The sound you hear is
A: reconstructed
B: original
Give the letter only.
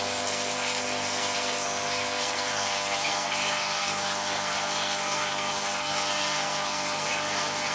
A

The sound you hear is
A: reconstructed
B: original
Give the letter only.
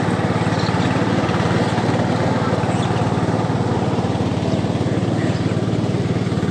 B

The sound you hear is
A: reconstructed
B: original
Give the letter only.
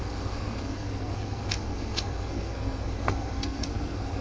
A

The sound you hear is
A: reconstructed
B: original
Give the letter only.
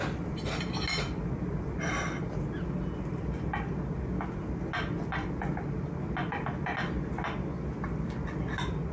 B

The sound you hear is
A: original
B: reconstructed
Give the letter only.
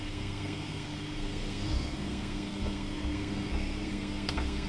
B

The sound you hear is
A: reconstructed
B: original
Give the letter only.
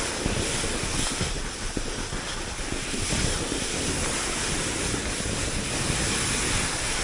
B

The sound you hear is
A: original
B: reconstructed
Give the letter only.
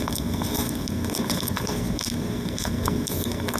B